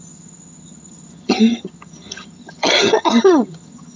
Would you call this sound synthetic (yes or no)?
yes